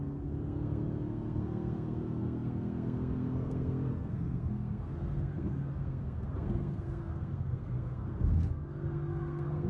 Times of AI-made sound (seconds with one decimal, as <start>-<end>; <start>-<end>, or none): 0.0-9.7